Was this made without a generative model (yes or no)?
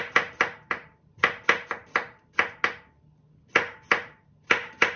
yes